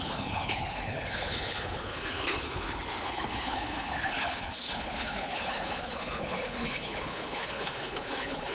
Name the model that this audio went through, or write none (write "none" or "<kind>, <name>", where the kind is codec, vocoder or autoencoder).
codec, HILCodec